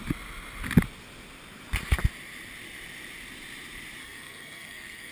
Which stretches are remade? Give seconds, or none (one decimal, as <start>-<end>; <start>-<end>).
4.0-5.1